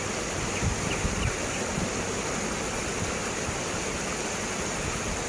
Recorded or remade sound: recorded